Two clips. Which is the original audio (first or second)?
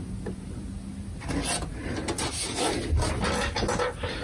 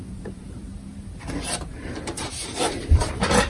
first